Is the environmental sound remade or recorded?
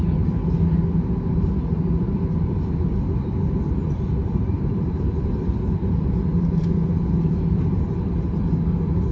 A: remade